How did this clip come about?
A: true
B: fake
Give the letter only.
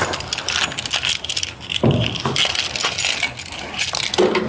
A